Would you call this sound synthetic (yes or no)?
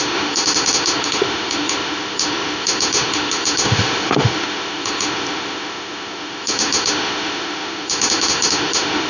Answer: yes